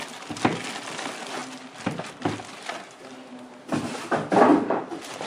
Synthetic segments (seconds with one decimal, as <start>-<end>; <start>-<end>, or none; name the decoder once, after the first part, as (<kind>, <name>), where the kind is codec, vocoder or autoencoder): 4.5-5.3 (vocoder, BigVGAN v2)